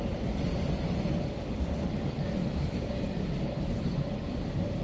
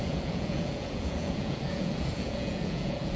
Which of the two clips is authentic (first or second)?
first